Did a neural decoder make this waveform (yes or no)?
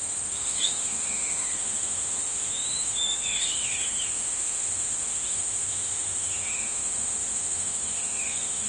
yes